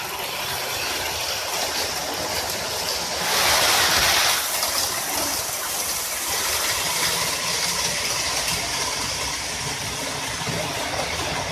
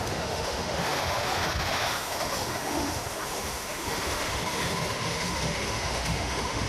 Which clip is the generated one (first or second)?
second